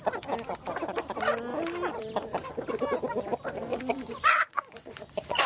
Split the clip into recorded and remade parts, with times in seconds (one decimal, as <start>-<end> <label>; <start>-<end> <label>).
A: 0.0-3.7 recorded; 3.7-5.5 remade